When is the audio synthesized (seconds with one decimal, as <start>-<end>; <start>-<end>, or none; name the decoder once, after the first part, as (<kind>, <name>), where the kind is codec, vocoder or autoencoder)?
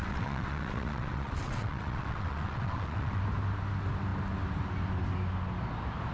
0.0-3.2 (vocoder, WaveNeXt)